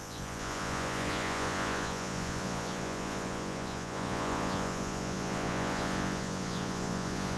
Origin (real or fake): fake